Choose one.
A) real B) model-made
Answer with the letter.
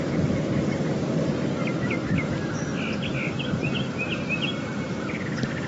A